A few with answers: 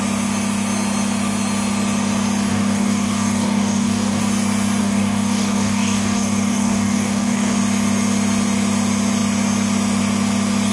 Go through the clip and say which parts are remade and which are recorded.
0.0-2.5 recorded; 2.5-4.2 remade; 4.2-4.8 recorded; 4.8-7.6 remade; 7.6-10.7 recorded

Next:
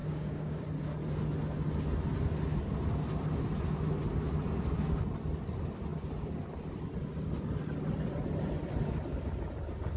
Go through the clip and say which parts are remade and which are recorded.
0.0-0.6 remade; 0.6-10.0 recorded